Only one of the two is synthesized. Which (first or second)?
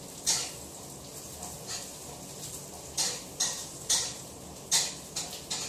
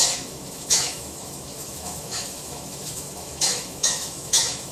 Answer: second